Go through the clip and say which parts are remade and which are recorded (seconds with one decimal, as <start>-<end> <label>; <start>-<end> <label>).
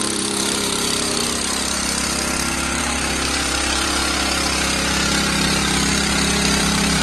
0.0-1.2 remade; 1.2-2.8 recorded; 2.8-4.0 remade; 4.0-6.6 recorded; 6.6-7.0 remade